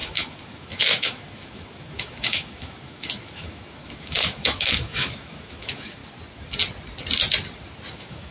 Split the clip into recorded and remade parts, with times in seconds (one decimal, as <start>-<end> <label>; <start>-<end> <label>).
0.0-6.0 remade; 6.0-7.9 recorded; 7.9-8.3 remade